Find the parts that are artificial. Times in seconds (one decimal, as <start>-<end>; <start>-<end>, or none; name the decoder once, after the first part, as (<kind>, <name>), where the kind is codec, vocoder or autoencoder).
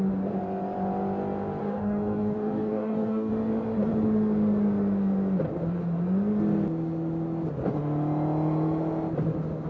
1.6-3.3 (codec, DAC)